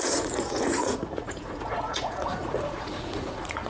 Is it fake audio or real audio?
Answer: fake